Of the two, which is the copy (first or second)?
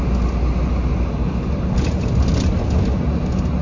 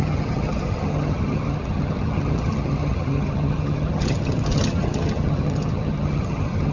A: second